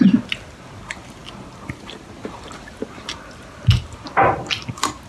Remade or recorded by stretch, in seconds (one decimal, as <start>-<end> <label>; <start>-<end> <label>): 0.0-5.1 recorded